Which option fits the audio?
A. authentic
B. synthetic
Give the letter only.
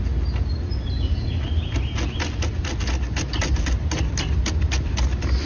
A